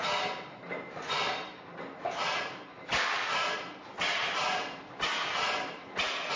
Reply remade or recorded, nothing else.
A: recorded